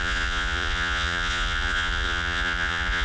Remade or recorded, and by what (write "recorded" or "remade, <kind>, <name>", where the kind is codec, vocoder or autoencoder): remade, vocoder, Vocos